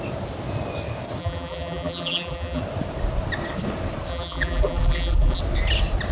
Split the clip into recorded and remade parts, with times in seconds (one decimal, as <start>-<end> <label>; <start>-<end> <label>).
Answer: 0.0-1.2 recorded; 1.2-2.6 remade; 2.6-4.1 recorded; 4.1-5.4 remade; 5.4-6.1 recorded